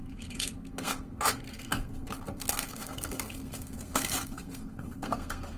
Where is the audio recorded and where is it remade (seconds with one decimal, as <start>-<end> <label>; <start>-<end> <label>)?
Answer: 0.0-5.6 remade